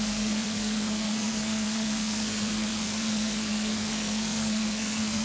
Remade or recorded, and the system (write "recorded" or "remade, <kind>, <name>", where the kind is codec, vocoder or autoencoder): remade, codec, SNAC